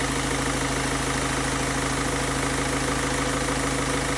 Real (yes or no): yes